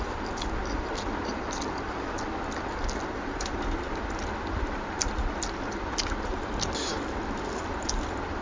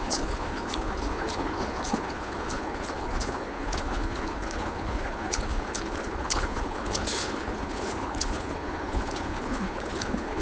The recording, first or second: first